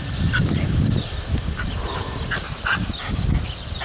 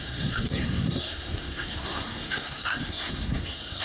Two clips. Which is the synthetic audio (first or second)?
second